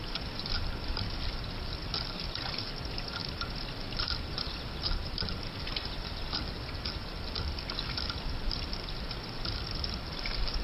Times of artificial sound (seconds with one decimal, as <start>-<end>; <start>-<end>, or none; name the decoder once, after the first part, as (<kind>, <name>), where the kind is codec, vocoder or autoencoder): none